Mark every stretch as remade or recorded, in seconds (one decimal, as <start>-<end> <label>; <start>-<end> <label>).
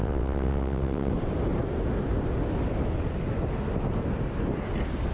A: 0.0-1.1 remade; 1.1-5.1 recorded